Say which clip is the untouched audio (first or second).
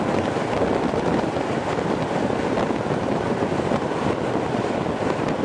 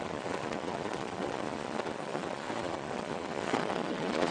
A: first